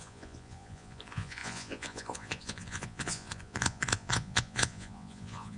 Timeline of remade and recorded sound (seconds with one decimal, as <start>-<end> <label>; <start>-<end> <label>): 0.0-5.6 remade